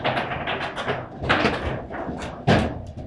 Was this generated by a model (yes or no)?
no